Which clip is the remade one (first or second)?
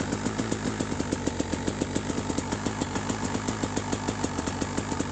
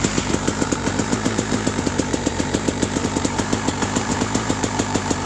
second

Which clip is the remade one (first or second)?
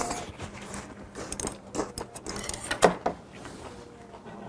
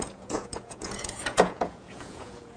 second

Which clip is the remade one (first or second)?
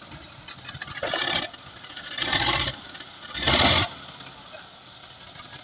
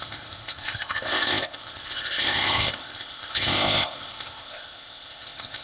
second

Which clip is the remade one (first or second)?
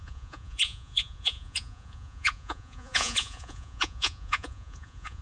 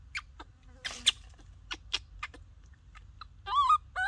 first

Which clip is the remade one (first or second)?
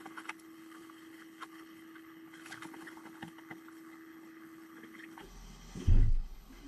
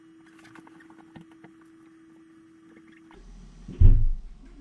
first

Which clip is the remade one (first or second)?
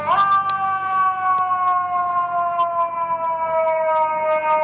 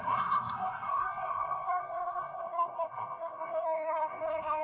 second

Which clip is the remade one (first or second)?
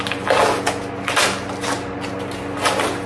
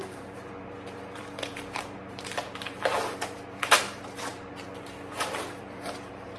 second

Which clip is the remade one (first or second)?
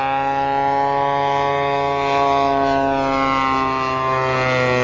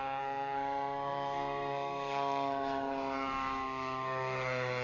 second